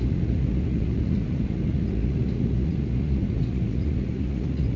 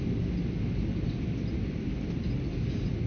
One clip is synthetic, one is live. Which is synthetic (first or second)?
first